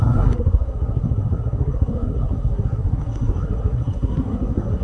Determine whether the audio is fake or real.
fake